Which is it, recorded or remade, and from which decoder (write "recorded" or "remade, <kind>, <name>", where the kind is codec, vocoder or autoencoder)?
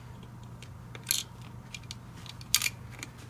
recorded